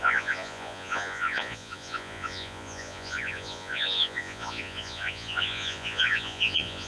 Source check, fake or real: fake